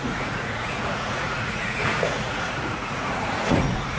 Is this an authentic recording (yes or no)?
no